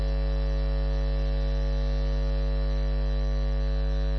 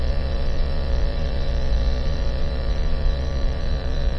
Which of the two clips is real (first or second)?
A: first